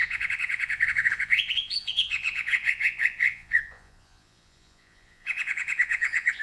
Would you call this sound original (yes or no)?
no